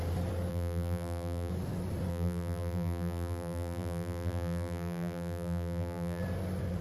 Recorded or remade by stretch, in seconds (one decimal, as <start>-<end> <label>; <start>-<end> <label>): 0.0-0.5 recorded; 0.5-1.5 remade; 1.5-2.1 recorded; 2.1-6.2 remade; 6.2-6.8 recorded

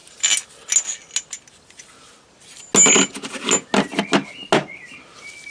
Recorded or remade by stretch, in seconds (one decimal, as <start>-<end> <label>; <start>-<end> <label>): 0.0-2.3 recorded; 2.3-2.7 remade; 2.7-5.5 recorded